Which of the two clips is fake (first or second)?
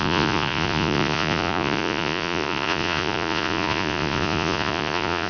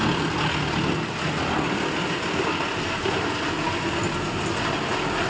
first